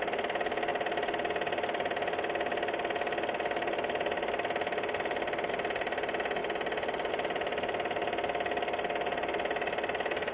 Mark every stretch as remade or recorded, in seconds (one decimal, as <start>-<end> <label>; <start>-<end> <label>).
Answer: 0.0-10.3 recorded